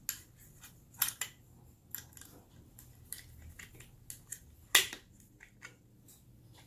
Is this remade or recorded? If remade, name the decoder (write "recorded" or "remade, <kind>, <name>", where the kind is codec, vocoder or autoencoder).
recorded